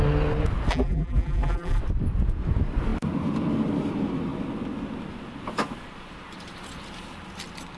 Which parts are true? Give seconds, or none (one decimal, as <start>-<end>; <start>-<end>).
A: 0.0-0.7; 1.8-7.8